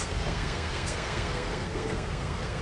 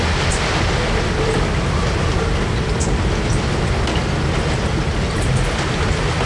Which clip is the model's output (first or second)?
first